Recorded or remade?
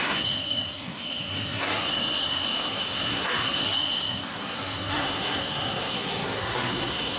remade